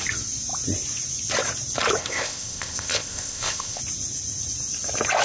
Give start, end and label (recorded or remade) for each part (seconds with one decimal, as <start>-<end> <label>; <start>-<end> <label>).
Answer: 0.0-2.0 recorded; 2.0-3.8 remade; 3.8-5.2 recorded